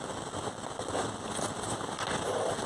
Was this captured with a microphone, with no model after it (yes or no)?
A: yes